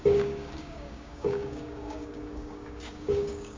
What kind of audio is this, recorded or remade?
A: remade